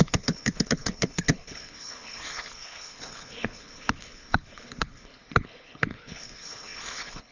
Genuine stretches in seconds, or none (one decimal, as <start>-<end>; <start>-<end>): none